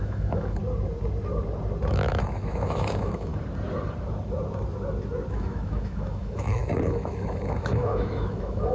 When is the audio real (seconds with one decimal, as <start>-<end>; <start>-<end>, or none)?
0.6-1.9; 3.3-5.3